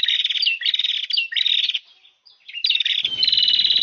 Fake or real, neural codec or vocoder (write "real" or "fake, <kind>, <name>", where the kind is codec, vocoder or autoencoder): real